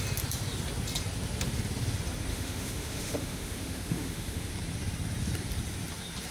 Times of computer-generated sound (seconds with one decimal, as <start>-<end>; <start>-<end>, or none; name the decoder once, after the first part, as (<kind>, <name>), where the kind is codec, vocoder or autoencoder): 2.3-4.5 (autoencoder, DAC-VAE)

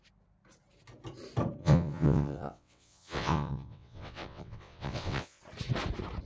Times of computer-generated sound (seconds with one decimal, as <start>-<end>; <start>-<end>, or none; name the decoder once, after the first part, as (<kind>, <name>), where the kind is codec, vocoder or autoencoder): 1.6-5.4 (vocoder, WaveNeXt)

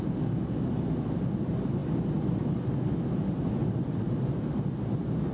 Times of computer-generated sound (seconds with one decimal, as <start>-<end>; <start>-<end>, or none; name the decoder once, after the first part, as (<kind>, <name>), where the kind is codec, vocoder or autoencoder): 1.8-2.3 (vocoder, BigVGAN v2); 3.6-4.8